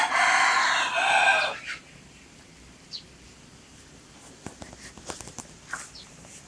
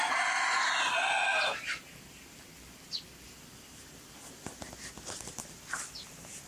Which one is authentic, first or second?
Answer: second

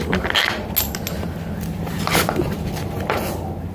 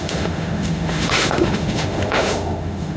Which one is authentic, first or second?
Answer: first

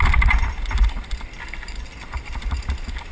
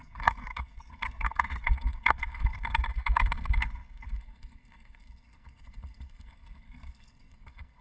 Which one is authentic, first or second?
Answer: first